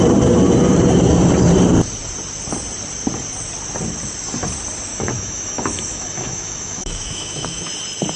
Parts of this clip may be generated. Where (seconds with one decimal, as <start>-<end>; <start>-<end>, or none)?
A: 4.9-7.7